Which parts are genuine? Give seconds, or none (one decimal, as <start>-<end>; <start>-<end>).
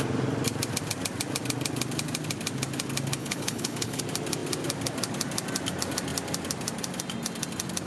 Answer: 0.0-3.2; 4.0-7.9